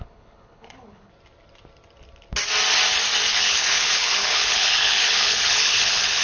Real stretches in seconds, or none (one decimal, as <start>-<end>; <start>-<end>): 1.1-3.3